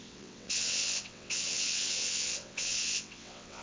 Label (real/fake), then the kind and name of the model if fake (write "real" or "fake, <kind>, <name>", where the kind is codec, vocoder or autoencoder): fake, vocoder, WaveNeXt